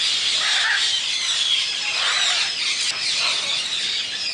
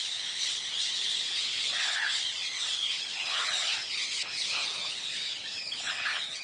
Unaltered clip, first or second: first